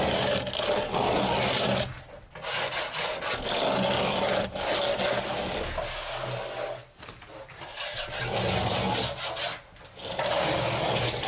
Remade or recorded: recorded